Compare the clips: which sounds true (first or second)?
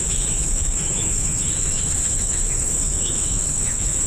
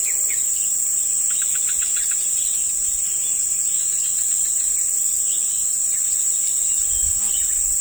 second